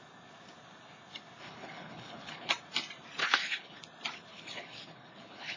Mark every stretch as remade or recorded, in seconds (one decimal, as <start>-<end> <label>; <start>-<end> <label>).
0.0-1.4 recorded; 1.4-2.5 remade; 2.5-3.2 recorded; 3.2-3.8 remade; 3.8-4.3 recorded; 4.3-5.6 remade